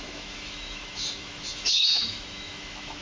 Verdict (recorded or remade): remade